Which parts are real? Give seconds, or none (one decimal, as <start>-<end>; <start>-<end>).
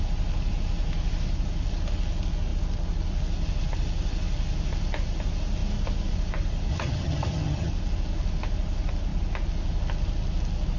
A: 0.0-6.7; 7.7-10.8